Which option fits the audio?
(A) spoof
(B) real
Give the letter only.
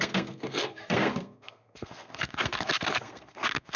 A